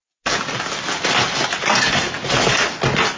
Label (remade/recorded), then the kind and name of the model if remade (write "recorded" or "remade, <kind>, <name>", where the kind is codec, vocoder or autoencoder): recorded